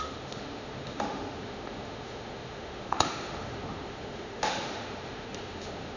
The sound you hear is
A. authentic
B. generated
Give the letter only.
B